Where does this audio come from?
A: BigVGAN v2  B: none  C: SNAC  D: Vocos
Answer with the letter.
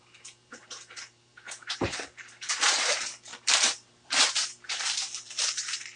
A